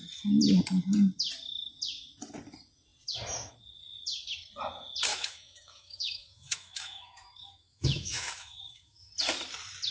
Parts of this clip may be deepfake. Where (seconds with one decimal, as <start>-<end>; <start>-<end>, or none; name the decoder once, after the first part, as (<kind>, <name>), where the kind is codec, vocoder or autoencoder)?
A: 5.1-9.1 (autoencoder, DAC-VAE)